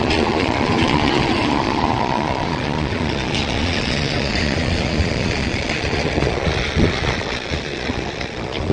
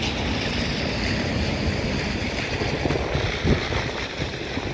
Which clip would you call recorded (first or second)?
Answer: second